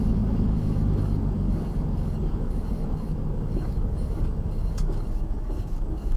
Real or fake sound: fake